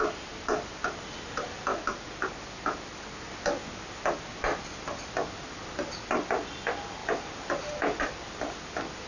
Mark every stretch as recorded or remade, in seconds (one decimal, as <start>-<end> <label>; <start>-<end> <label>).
0.0-9.1 recorded